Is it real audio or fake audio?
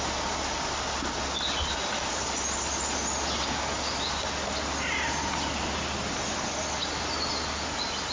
real